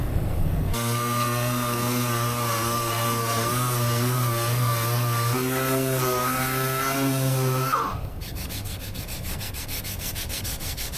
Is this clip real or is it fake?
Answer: fake